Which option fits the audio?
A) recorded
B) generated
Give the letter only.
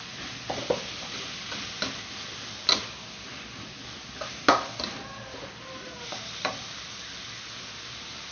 A